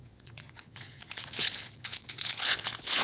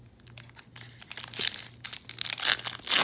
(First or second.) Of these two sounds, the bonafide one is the second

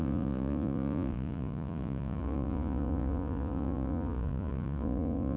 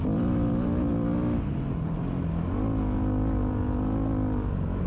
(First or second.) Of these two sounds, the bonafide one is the second